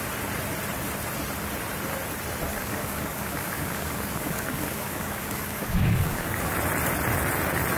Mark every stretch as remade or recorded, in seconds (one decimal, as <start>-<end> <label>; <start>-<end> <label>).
0.0-2.5 recorded; 2.5-6.5 remade; 6.5-7.8 recorded